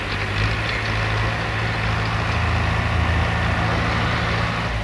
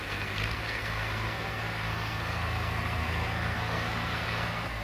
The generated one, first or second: second